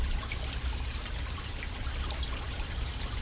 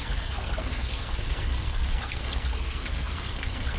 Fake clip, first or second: second